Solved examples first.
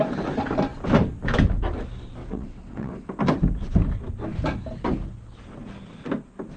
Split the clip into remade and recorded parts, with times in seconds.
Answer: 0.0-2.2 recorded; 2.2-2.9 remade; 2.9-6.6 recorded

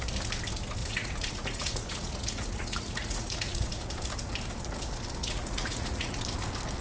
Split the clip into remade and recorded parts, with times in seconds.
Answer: 0.0-0.8 recorded; 0.8-3.9 remade; 3.9-5.2 recorded; 5.2-6.2 remade; 6.2-6.8 recorded